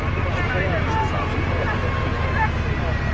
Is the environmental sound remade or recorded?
recorded